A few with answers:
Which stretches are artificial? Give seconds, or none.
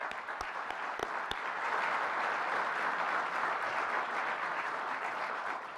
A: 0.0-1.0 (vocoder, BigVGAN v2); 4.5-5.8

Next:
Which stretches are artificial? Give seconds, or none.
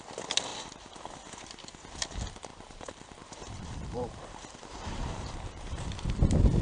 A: 2.5-6.1 (vocoder, BigVGAN v2)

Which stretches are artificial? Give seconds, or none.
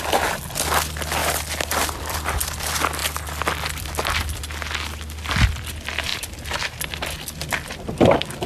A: 1.2-2.3 (vocoder, BigVGAN v2); 6.1-7.8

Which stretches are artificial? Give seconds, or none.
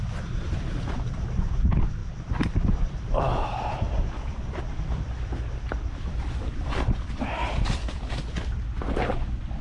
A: 0.0-9.6 (vocoder, BigVGAN v2)